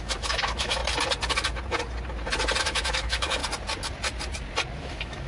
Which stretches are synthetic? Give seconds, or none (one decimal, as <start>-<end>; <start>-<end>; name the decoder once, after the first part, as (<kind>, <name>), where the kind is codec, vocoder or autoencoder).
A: 0.0-0.8 (autoencoder, DAC-VAE); 2.6-3.4; 4.8-5.3